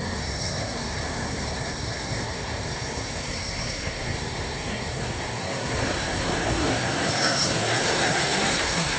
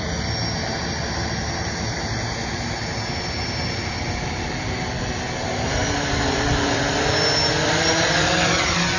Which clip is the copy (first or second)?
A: first